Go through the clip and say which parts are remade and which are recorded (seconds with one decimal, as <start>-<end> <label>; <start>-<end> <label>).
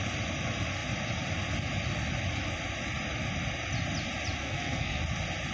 0.0-4.4 recorded; 4.4-5.0 remade; 5.0-5.5 recorded